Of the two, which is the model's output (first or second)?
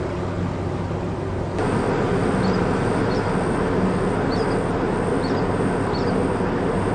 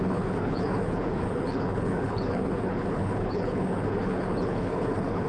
second